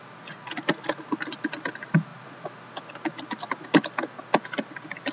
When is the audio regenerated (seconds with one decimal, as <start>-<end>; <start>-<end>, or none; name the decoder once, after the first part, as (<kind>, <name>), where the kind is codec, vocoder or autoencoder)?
none